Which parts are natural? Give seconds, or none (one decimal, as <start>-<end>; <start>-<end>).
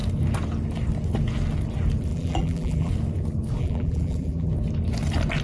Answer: 0.0-2.1; 2.9-3.6; 4.5-5.4